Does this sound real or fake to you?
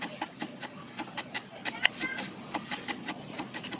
real